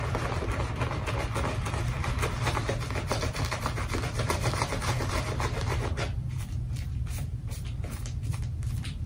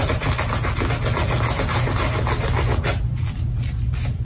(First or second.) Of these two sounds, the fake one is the first